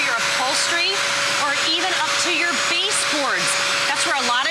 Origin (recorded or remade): recorded